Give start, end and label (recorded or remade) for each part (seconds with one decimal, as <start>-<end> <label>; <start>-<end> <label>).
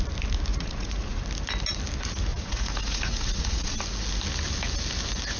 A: 0.0-0.5 recorded; 0.5-1.2 remade; 1.2-2.3 recorded; 2.3-3.8 remade; 3.8-5.4 recorded